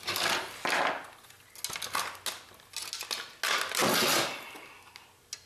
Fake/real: real